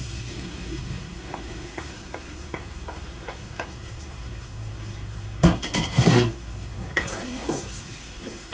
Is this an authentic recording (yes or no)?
no